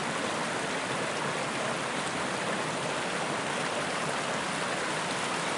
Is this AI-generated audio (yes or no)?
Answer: no